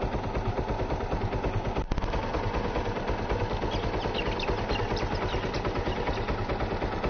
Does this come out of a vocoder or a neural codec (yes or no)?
no